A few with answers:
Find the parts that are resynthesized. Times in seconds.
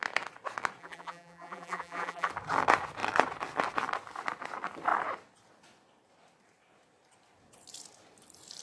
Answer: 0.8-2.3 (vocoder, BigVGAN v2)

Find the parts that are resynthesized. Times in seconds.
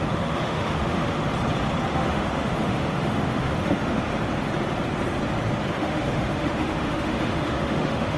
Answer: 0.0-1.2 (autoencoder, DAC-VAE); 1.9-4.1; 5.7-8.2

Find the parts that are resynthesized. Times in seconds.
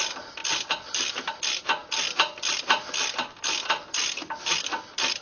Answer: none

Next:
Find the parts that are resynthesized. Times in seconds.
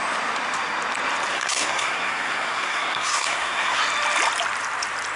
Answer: 1.3-3.8 (codec, SNAC)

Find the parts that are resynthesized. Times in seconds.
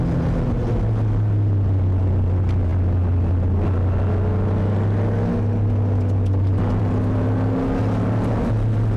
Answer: none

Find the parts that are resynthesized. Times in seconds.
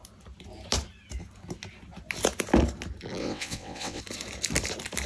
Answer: 3.2-4.0 (vocoder, WaveNeXt)